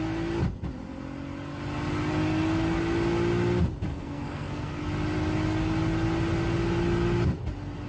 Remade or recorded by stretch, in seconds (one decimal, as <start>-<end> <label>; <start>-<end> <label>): 0.0-3.9 recorded; 3.9-4.8 remade; 4.8-7.9 recorded